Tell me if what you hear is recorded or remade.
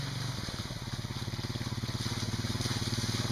recorded